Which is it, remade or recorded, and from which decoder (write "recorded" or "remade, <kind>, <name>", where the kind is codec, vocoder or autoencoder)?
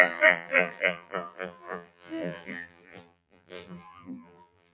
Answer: remade, vocoder, BigVGAN v2